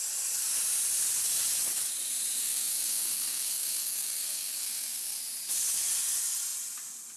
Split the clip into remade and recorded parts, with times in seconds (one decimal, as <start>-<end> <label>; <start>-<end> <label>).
0.0-2.4 recorded; 2.4-5.2 remade; 5.2-7.2 recorded